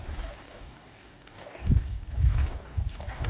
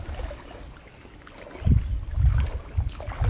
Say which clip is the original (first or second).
second